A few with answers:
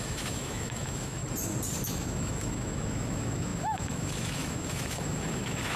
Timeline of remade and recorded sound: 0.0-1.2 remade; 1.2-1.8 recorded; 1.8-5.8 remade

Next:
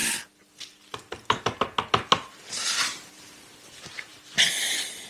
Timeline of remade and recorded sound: 0.0-3.1 recorded; 3.1-4.1 remade; 4.1-5.1 recorded

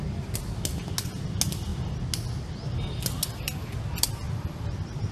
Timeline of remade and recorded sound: 0.0-5.1 recorded

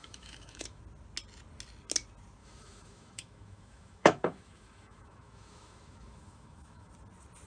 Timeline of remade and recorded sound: 0.0-0.8 remade; 0.8-2.4 recorded; 2.4-6.9 remade; 6.9-7.5 recorded

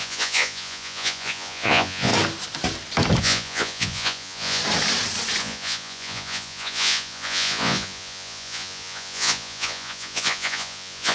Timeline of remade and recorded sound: 0.0-2.1 remade; 2.1-3.2 recorded; 3.2-4.6 remade; 4.6-5.4 recorded; 5.4-11.1 remade

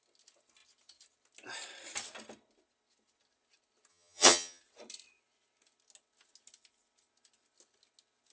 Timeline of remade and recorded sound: 0.0-3.9 recorded; 3.9-4.6 remade; 4.6-8.3 recorded

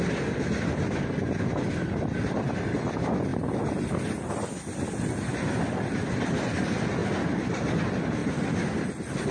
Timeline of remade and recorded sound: 0.0-9.3 recorded